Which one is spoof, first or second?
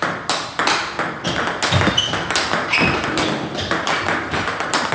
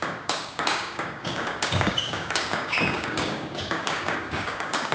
second